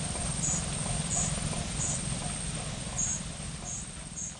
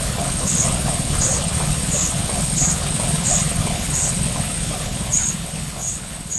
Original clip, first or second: first